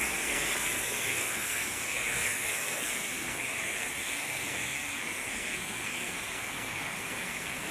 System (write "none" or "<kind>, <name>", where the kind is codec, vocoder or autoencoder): codec, SNAC